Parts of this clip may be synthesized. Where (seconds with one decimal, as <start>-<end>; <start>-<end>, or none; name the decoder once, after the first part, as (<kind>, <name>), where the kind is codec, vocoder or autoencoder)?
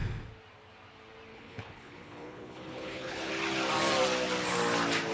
1.3-3.3 (codec, HILCodec)